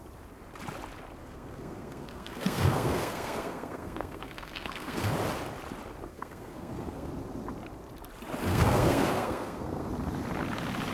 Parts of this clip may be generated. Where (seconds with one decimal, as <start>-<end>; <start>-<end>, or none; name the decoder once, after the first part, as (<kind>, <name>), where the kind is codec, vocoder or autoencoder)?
1.2-5.1 (codec, SNAC); 6.1-7.1; 8.5-9.9